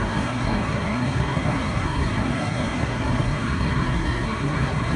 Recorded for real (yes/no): no